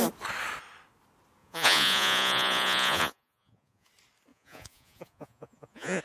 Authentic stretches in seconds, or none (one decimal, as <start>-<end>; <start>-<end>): 0.0-1.4; 3.9-4.3